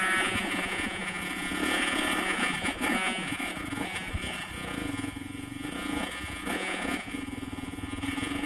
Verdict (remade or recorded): remade